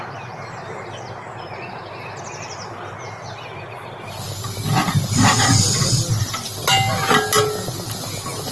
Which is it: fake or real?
real